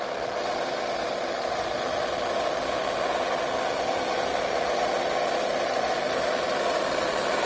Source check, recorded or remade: recorded